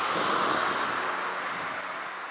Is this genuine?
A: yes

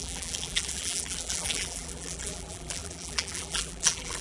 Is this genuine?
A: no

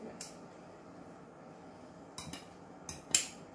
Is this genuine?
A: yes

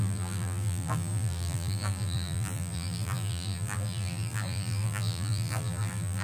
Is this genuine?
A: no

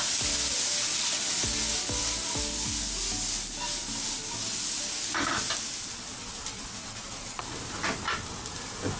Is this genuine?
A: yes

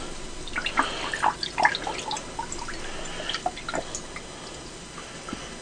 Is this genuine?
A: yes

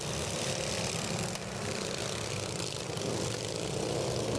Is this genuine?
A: yes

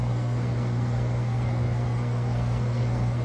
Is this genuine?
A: no